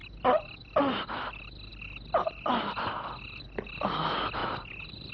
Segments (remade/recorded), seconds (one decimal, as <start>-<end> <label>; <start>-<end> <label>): 0.0-5.1 recorded